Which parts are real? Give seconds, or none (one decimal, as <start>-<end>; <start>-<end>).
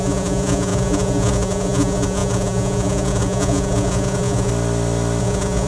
4.5-5.2